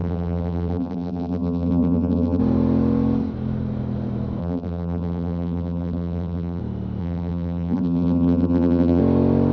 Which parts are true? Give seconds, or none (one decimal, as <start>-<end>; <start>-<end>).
2.4-4.4; 6.6-7.0; 9.0-9.5